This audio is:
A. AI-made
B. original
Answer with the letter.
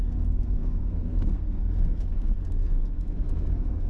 A